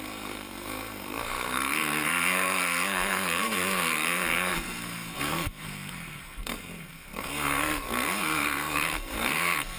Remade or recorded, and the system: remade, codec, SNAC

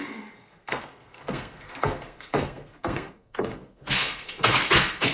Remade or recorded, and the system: remade, codec, SNAC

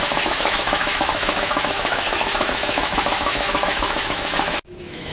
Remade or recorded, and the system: remade, autoencoder, DAC-VAE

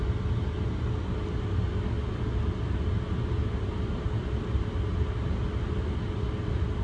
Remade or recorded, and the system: recorded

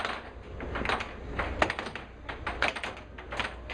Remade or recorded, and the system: recorded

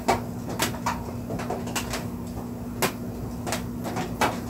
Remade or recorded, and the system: recorded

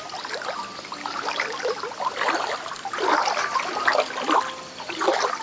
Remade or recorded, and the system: recorded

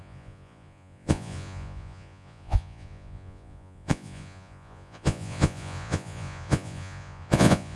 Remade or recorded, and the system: remade, vocoder, Vocos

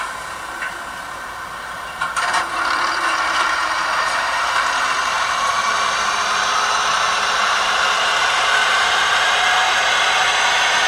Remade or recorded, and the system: remade, vocoder, BigVGAN v2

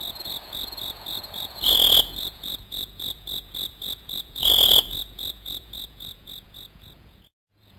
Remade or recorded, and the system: remade, vocoder, Vocos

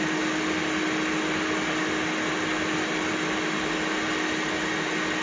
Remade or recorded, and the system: recorded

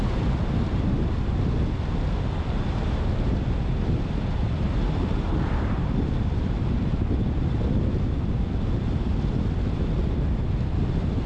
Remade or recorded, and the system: recorded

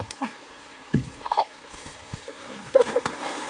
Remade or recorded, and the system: remade, codec, SNAC